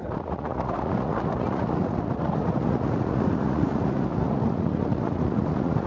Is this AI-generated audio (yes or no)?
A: yes